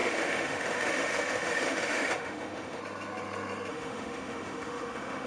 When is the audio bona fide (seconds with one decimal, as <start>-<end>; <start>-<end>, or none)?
2.8-3.7